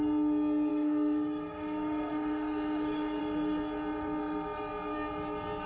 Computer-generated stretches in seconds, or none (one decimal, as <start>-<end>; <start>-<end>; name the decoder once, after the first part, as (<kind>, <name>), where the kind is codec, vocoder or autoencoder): 0.7-3.2 (codec, DAC)